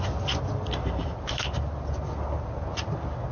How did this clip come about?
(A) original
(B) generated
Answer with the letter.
A